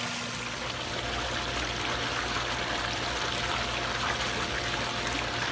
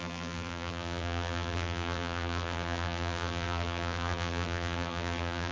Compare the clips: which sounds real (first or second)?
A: first